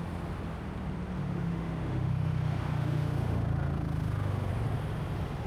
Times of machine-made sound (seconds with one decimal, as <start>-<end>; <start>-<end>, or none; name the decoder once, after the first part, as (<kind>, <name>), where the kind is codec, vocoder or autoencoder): 1.2-4.5 (autoencoder, DAC-VAE)